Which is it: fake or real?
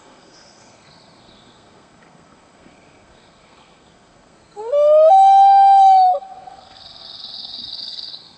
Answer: fake